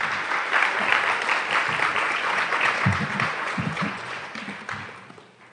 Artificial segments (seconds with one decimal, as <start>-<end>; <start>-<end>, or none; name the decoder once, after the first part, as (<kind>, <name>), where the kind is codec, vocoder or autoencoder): 1.9-4.3 (vocoder, Vocos)